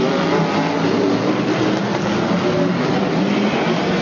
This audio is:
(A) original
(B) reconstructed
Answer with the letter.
A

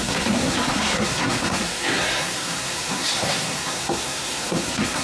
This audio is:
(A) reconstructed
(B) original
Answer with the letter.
A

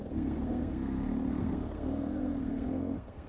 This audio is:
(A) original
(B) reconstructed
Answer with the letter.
B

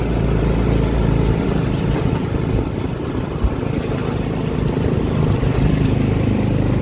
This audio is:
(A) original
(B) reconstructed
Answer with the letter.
A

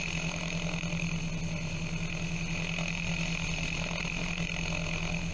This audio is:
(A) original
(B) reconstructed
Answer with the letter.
A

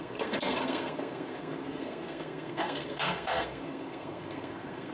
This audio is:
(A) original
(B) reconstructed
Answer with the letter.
B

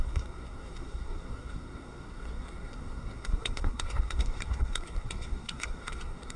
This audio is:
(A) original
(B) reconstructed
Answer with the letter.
B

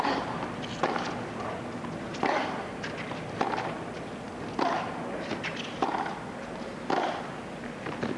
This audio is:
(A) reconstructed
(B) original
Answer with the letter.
B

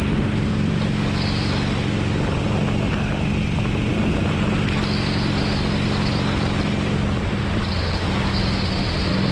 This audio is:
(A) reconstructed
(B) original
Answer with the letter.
B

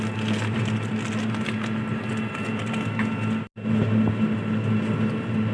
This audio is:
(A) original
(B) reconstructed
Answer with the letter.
A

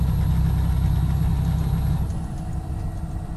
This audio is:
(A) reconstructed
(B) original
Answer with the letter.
B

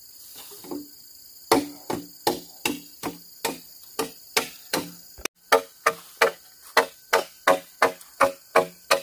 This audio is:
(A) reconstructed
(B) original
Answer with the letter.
B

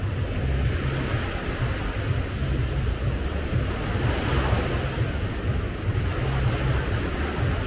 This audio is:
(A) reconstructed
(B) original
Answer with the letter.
B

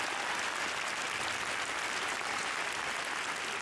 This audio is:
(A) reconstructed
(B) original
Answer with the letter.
B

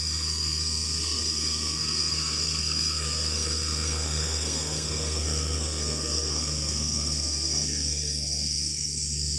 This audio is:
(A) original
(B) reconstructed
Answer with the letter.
B